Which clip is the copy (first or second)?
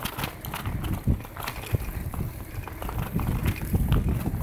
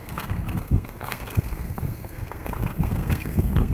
second